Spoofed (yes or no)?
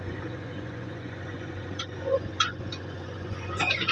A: yes